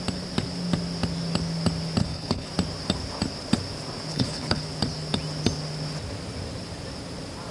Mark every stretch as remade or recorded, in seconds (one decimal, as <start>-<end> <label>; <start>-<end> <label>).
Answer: 0.0-2.0 recorded; 2.0-2.5 remade; 2.5-4.1 recorded; 4.1-4.6 remade; 4.6-7.5 recorded